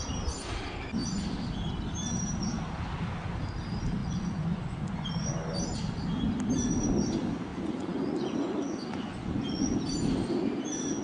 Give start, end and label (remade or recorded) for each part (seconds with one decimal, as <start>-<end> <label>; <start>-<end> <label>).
0.0-4.0 recorded; 4.0-5.1 remade; 5.1-7.5 recorded; 7.5-9.8 remade; 9.8-11.0 recorded